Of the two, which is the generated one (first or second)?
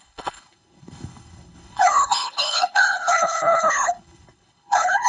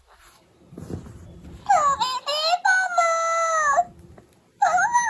first